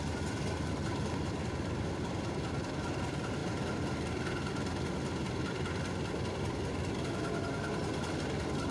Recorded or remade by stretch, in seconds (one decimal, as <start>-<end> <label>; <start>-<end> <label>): 0.0-8.7 recorded